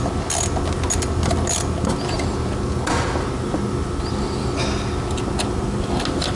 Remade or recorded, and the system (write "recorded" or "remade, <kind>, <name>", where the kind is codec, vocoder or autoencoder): recorded